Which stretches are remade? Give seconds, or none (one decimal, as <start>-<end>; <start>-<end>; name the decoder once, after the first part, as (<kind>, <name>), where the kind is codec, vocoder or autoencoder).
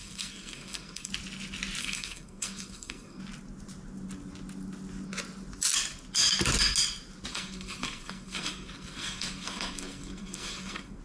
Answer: 0.0-1.1 (codec, SNAC); 1.8-3.2; 7.3-11.0